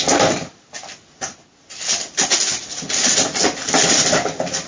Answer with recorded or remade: recorded